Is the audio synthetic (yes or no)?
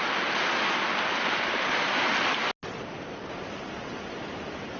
no